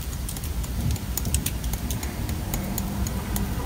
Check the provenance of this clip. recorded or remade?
remade